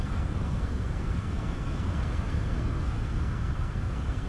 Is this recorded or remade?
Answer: remade